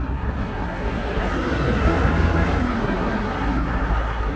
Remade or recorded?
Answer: remade